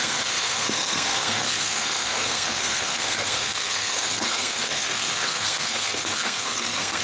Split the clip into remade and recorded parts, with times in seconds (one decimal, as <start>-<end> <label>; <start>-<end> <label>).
0.0-7.0 remade